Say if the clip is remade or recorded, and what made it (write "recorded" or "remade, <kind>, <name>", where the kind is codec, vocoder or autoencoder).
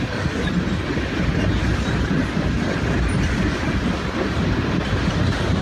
recorded